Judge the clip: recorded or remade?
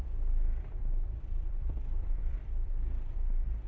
remade